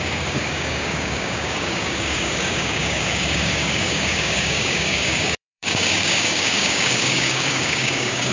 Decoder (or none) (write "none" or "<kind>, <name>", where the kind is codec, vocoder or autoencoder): codec, DAC